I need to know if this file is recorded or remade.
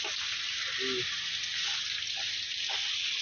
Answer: recorded